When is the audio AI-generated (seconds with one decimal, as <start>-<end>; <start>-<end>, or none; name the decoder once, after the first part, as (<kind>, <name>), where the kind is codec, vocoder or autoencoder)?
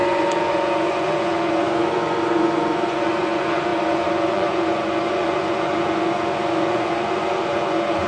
0.0-8.1 (vocoder, Vocos)